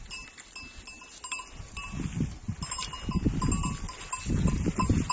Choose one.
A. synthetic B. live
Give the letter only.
B